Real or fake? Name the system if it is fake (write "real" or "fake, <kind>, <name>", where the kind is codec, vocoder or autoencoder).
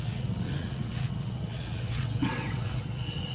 fake, vocoder, WaveNeXt